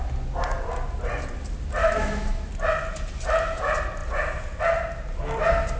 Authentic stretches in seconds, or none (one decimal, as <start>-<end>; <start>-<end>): 0.0-1.8; 2.5-5.8